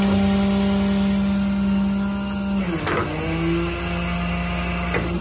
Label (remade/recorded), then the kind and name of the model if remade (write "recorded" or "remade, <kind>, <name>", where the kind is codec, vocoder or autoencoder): recorded